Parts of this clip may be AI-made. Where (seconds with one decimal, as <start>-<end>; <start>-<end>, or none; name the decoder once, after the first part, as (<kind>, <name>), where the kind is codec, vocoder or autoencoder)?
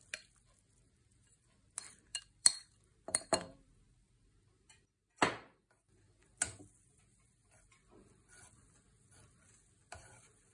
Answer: 2.1-4.1 (vocoder, BigVGAN v2); 6.2-7.0